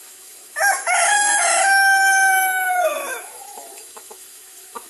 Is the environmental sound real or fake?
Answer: fake